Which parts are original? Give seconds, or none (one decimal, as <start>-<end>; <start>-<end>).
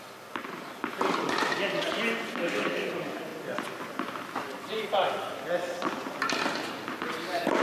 0.0-2.3; 2.9-7.6